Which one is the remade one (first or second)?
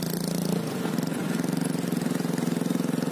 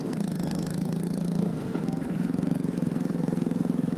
second